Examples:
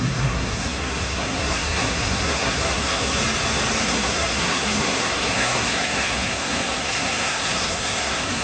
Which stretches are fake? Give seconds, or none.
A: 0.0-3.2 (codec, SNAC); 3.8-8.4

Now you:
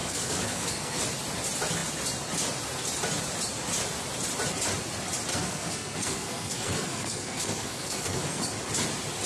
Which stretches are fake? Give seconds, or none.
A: 0.0-1.0 (codec, SNAC); 5.3-8.4